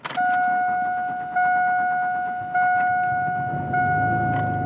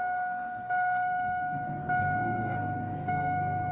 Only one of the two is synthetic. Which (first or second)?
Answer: second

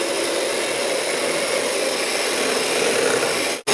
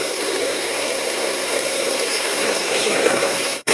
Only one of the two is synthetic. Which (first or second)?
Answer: second